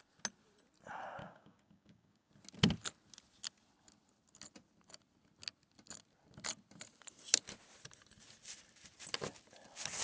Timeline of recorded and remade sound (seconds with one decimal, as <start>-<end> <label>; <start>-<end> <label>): 0.0-1.2 recorded; 1.2-2.3 remade; 2.3-10.0 recorded